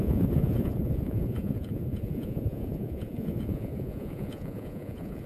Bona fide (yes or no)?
no